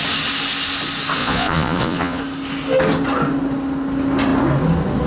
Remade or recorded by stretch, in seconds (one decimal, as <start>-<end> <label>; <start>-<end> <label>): 0.0-1.2 recorded; 1.2-2.2 remade; 2.2-5.1 recorded